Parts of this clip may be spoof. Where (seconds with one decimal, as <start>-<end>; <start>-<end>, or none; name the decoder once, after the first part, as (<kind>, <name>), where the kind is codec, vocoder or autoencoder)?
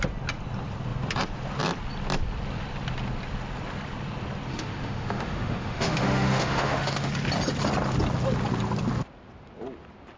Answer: 4.5-7.1 (autoencoder, DAC-VAE)